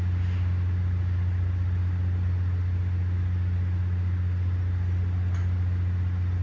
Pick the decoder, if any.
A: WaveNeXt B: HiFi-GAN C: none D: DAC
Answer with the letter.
C